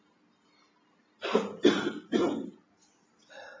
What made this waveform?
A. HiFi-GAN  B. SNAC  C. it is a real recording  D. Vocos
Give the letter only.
C